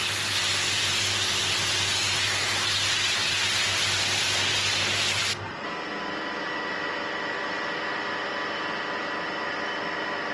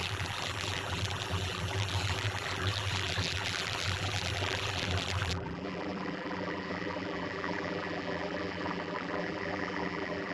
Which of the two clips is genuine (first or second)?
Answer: first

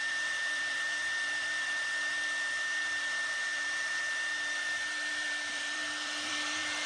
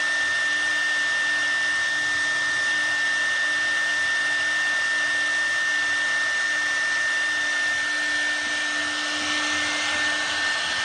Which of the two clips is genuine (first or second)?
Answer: second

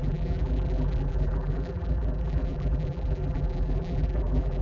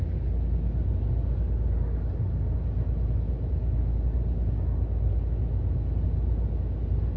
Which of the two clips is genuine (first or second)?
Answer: second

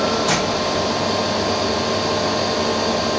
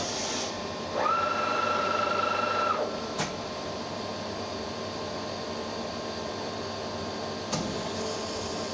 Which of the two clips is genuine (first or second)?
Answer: first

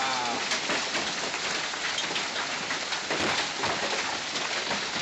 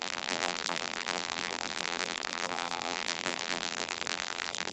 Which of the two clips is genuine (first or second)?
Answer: first